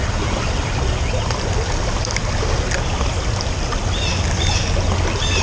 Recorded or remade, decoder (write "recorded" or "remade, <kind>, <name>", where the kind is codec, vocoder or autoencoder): recorded